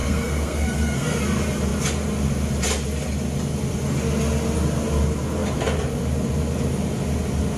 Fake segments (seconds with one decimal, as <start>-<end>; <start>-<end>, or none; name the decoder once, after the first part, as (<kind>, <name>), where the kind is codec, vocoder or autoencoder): 0.0-1.2 (codec, SNAC)